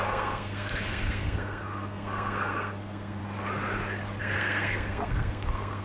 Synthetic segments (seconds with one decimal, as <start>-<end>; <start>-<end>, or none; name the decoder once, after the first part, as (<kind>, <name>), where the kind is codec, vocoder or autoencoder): 0.0-3.2 (codec, SNAC); 4.2-5.8